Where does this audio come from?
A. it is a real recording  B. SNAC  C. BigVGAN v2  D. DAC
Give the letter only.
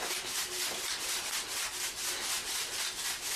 A